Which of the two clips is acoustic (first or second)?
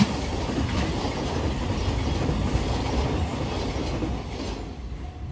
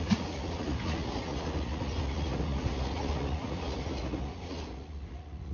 first